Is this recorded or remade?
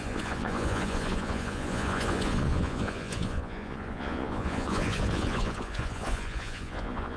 remade